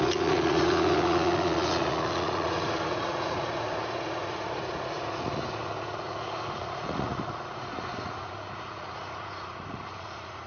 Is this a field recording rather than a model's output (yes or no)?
no